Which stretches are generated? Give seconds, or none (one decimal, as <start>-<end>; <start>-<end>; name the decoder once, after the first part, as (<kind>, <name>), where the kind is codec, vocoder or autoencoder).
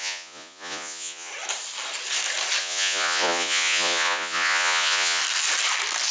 0.0-1.3 (vocoder, Vocos); 2.6-5.2